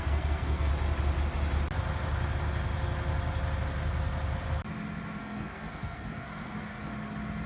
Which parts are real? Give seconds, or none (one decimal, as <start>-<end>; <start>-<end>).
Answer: 0.7-5.2; 6.9-7.5